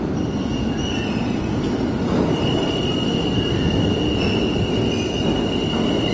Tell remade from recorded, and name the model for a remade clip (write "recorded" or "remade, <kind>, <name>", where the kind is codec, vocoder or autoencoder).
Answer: recorded